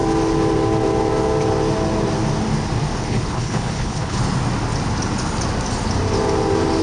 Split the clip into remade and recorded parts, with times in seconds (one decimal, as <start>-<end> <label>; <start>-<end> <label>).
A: 0.0-3.0 recorded; 3.0-4.2 remade; 4.2-6.8 recorded

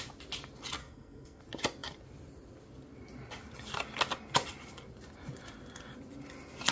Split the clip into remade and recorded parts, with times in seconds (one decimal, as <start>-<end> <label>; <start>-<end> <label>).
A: 0.0-0.8 recorded; 0.8-1.4 remade; 1.4-6.7 recorded

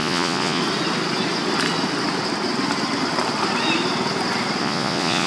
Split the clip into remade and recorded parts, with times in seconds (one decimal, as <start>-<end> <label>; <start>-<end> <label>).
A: 0.0-0.6 remade; 0.6-4.6 recorded; 4.6-5.3 remade

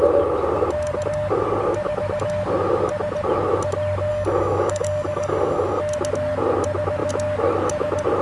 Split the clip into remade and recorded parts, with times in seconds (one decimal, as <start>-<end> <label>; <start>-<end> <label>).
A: 0.0-4.1 recorded; 4.1-5.8 remade; 5.8-8.2 recorded

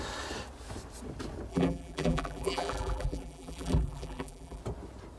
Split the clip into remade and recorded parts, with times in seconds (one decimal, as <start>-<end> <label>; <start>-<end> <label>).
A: 0.0-1.5 recorded; 1.5-4.6 remade; 4.6-5.2 recorded